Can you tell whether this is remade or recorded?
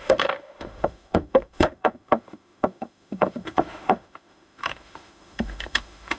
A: remade